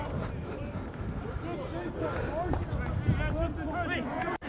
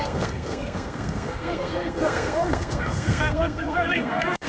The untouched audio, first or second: first